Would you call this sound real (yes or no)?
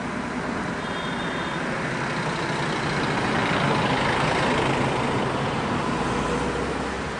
yes